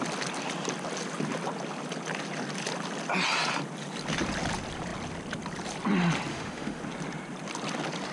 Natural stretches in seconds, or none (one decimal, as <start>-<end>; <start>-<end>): 0.0-6.3; 6.8-8.1